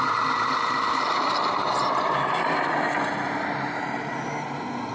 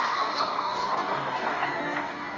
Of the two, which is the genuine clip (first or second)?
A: first